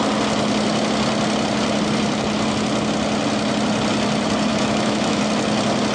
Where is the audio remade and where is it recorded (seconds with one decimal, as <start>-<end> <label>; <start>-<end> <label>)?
0.0-4.5 recorded; 4.5-5.2 remade; 5.2-5.9 recorded